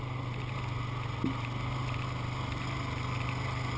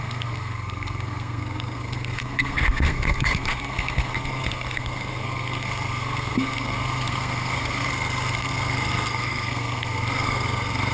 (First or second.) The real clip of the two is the first